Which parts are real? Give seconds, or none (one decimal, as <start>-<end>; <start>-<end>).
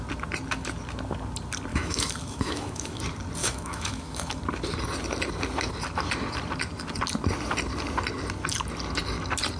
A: 0.0-1.7; 3.0-3.4; 4.4-9.6